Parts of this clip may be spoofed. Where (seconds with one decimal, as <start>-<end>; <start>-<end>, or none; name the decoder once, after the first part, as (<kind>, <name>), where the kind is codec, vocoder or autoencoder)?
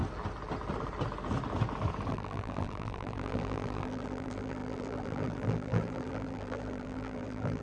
2.1-7.6 (vocoder, BigVGAN v2)